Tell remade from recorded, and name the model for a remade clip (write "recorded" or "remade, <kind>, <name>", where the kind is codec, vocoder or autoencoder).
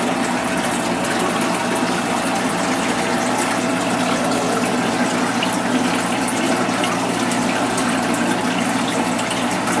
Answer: recorded